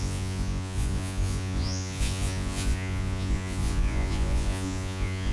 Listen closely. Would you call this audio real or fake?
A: fake